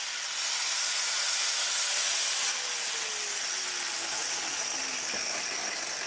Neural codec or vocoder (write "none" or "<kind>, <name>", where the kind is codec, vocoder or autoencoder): none